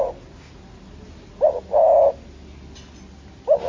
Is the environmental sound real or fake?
real